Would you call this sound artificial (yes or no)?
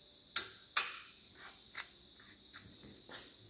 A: no